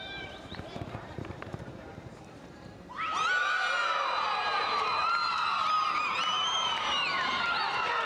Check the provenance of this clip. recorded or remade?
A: remade